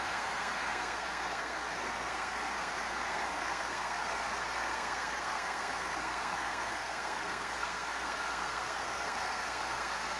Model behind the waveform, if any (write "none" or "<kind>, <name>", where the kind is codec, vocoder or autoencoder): codec, SNAC